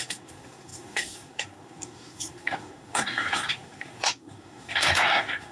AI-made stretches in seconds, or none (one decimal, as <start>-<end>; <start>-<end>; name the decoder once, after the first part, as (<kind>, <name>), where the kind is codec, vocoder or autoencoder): 0.0-5.5 (codec, SNAC)